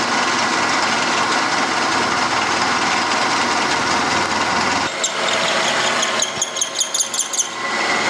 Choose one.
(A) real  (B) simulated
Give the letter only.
A